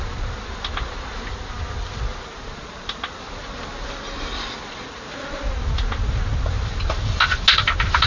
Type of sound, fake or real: real